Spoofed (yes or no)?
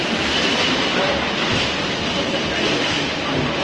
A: no